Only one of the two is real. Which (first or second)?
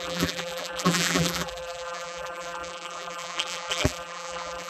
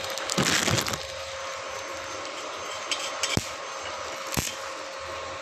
second